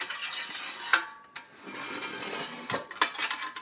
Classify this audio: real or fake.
real